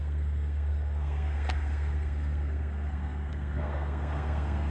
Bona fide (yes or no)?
no